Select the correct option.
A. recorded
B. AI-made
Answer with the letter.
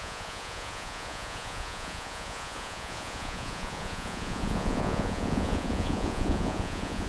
B